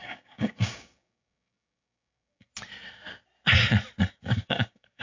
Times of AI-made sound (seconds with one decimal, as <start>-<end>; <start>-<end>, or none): 0.0-2.5; 4.0-5.0